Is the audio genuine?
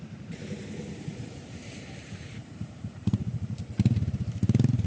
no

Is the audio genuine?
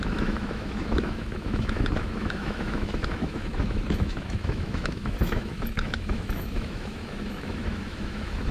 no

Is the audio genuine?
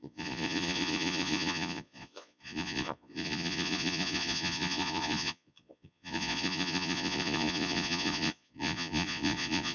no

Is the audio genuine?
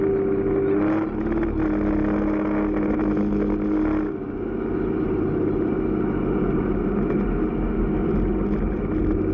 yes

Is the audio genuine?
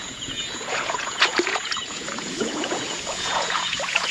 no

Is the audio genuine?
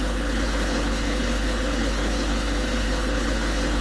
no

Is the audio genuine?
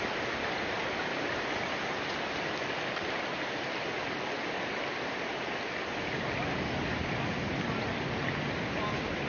yes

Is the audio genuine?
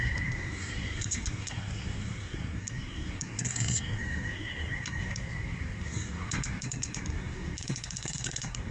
no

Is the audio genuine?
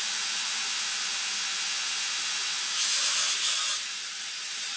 yes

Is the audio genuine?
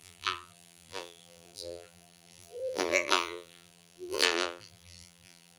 no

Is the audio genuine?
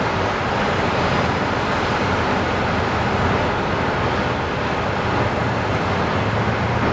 yes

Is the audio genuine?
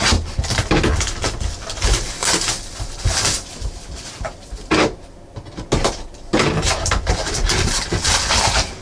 yes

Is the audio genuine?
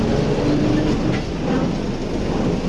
yes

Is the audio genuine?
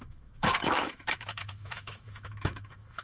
no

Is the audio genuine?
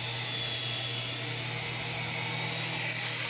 yes